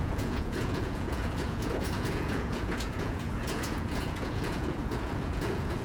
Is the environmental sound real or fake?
fake